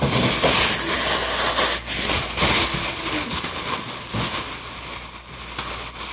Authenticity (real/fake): real